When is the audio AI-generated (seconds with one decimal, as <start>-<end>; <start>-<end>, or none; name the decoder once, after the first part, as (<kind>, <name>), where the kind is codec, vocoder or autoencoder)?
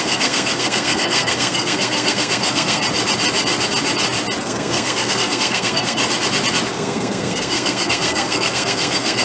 0.0-2.8 (codec, SNAC); 4.4-6.0; 6.7-9.2